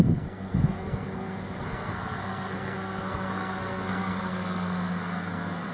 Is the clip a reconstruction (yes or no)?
yes